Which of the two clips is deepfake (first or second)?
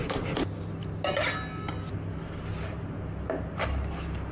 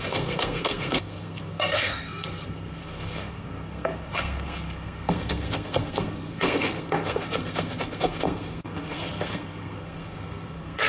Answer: second